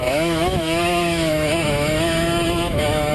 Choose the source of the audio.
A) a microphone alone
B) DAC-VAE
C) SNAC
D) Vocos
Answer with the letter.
B